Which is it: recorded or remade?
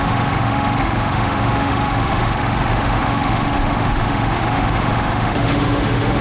remade